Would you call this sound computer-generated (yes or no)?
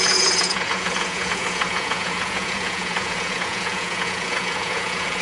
yes